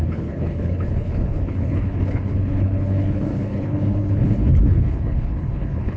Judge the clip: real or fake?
fake